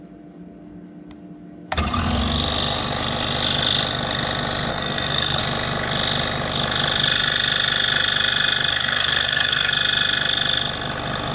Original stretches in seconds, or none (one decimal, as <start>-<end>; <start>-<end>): 0.0-4.7; 5.4-8.7; 9.7-11.3